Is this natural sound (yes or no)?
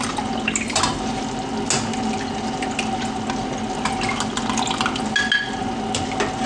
yes